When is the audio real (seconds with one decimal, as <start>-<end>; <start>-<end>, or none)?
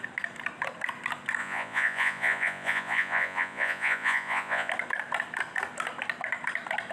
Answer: 0.0-1.4; 4.7-6.9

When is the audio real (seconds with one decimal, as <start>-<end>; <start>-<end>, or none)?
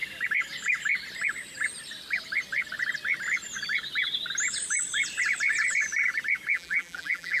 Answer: 0.0-6.5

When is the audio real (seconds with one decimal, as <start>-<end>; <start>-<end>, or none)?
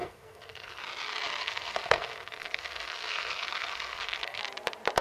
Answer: 0.8-1.4; 4.4-5.0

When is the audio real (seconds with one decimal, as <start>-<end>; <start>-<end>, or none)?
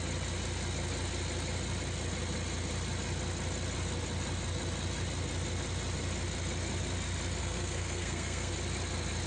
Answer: 0.0-7.4; 8.5-9.3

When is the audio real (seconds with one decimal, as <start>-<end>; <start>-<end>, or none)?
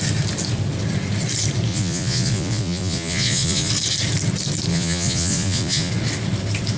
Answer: 0.0-1.7; 3.7-4.7; 5.9-6.8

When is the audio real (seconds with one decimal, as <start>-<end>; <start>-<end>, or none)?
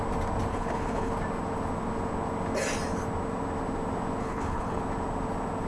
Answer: 0.0-0.5; 1.1-4.2; 4.8-5.7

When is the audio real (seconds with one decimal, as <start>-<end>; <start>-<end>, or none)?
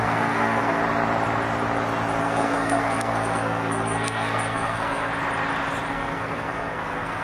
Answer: 0.8-2.2; 5.1-5.9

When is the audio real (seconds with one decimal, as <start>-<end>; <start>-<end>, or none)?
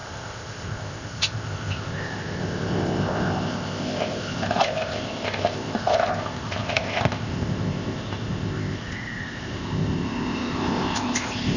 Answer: none